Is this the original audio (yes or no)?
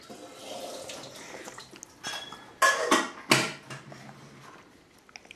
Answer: yes